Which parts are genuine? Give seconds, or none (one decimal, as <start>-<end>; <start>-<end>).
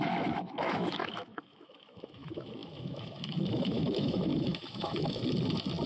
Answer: 5.2-5.9